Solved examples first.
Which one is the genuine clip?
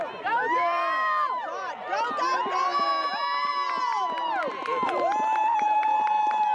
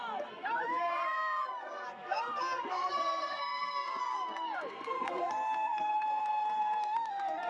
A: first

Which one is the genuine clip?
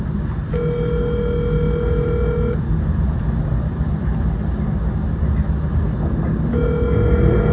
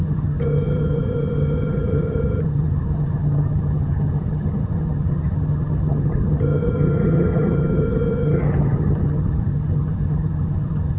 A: first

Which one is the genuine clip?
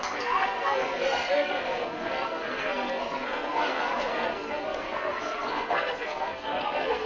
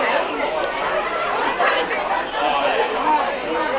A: second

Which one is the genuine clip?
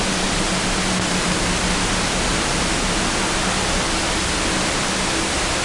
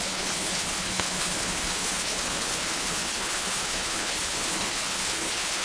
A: first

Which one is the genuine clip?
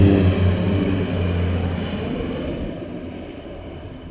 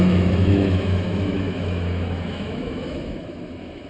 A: first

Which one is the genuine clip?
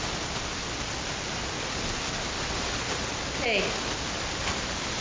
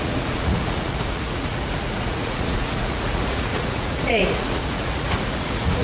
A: first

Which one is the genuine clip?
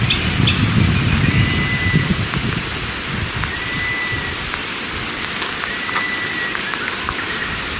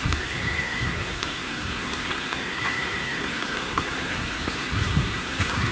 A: first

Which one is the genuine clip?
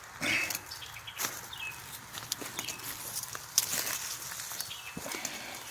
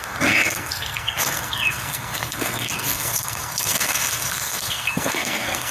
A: first